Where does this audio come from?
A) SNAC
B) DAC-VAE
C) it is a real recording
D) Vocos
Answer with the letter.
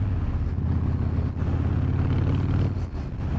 C